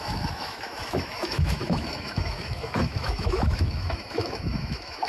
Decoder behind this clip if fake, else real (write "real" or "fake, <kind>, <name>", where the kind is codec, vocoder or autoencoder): fake, autoencoder, DAC-VAE